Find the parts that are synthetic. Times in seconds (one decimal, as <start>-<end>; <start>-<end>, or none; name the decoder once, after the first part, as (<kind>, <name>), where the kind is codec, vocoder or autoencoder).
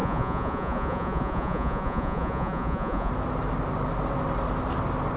0.0-3.1 (vocoder, Vocos)